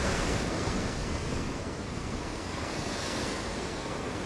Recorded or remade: remade